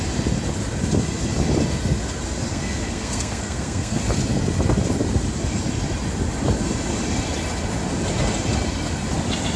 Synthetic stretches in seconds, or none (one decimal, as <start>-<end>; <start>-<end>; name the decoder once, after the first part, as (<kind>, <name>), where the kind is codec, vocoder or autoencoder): 2.5-4.0 (codec, SNAC)